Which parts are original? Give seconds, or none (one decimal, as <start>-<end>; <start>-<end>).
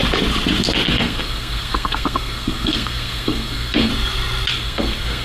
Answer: 0.0-0.9; 3.9-4.5